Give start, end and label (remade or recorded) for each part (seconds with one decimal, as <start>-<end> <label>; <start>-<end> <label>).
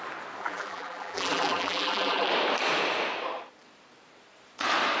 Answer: 0.0-0.4 recorded; 0.4-2.3 remade; 2.3-5.0 recorded